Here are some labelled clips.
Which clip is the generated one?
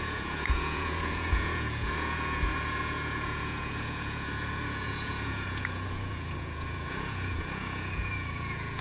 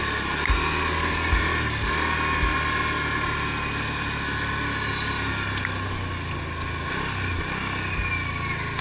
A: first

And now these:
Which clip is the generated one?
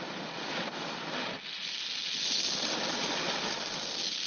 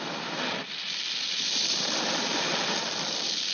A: second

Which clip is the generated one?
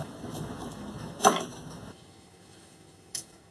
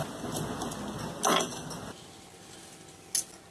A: first